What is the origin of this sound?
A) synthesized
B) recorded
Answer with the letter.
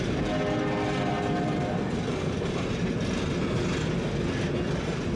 B